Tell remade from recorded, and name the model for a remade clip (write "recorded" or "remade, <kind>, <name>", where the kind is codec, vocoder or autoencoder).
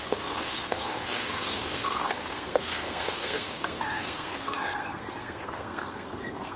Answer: remade, codec, SNAC